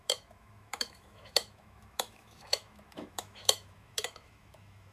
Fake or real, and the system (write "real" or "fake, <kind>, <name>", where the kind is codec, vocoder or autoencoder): fake, autoencoder, DAC-VAE